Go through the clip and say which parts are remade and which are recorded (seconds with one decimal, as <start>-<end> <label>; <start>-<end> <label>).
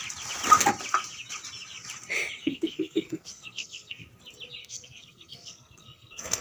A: 0.0-2.4 recorded; 2.4-4.1 remade; 4.1-4.6 recorded; 4.6-6.4 remade